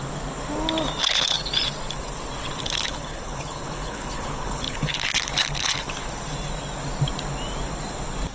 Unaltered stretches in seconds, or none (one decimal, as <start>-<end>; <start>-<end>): 0.0-1.0; 1.5-2.6; 5.9-8.3

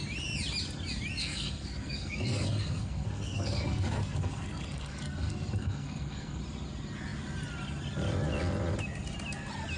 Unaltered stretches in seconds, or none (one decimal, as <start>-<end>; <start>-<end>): 0.0-1.2; 6.4-9.8

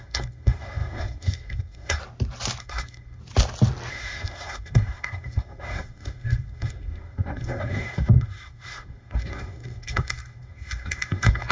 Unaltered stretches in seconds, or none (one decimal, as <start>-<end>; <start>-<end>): 2.0-2.6; 3.2-3.9